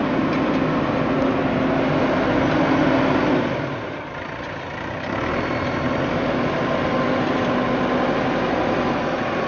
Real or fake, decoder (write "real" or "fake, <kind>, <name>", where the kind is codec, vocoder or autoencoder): real